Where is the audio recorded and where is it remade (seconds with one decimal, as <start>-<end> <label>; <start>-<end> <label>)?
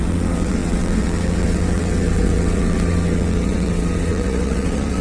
0.0-5.0 remade